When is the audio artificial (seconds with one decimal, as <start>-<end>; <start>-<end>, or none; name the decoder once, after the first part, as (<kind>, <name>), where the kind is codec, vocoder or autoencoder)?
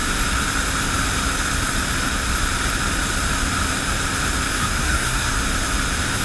4.5-5.3 (codec, SNAC)